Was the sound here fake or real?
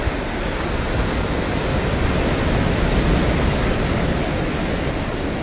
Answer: real